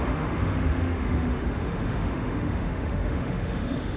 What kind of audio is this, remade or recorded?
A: remade